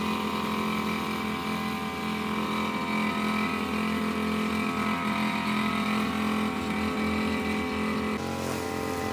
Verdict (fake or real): real